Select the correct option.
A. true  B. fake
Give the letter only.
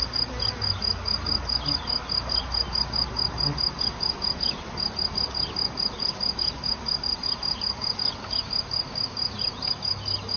A